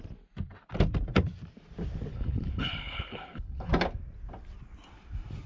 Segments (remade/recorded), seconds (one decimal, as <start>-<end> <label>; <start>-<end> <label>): 0.0-2.1 recorded; 2.1-3.7 remade; 3.7-5.5 recorded